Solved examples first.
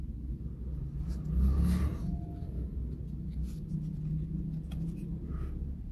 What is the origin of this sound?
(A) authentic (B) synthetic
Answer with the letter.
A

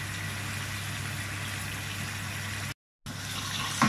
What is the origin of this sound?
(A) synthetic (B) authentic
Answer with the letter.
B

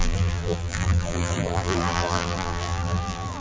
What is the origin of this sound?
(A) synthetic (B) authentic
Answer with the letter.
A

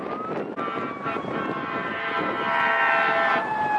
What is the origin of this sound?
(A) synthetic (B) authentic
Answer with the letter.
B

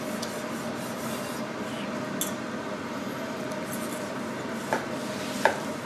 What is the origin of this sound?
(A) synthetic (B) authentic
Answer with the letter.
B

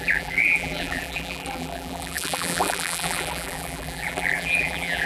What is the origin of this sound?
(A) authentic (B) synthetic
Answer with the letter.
B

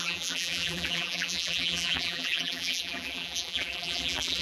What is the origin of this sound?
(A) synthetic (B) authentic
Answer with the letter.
A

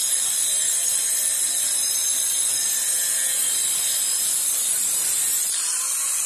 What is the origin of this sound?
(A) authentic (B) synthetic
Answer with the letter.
A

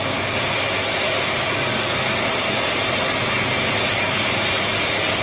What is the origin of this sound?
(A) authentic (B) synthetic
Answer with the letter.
A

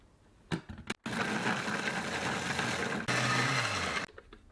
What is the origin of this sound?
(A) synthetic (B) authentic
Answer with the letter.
B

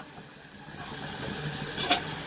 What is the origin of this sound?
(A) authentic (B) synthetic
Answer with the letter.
A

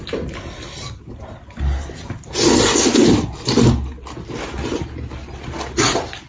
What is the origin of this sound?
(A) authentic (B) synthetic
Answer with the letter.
A